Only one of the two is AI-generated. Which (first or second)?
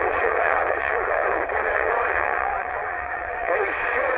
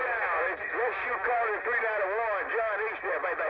first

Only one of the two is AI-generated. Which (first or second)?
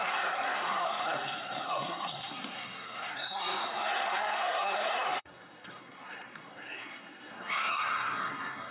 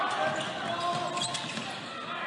first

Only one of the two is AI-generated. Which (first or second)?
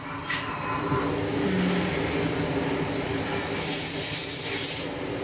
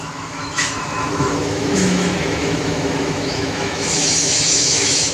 second